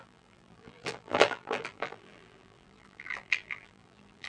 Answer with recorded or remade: remade